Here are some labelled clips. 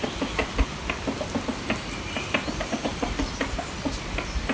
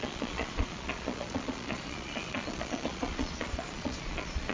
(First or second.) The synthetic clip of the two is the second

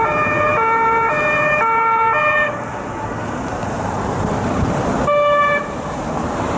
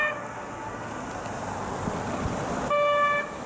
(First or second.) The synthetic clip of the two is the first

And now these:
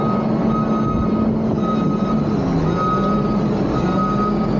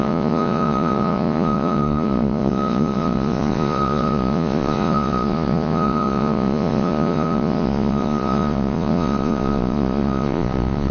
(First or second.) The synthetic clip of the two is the second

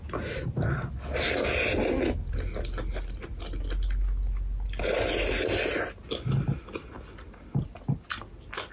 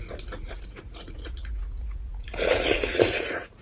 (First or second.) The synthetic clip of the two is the second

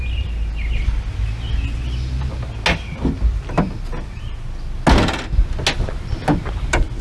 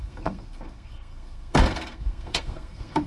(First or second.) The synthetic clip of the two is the second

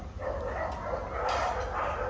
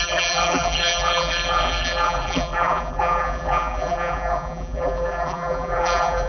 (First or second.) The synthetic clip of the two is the second